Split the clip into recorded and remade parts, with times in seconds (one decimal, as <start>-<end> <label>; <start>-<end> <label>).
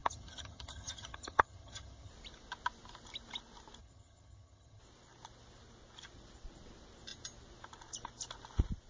0.0-2.1 remade; 2.1-3.8 recorded; 3.8-4.8 remade; 4.8-8.9 recorded